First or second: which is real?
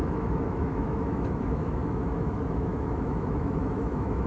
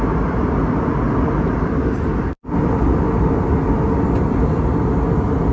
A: second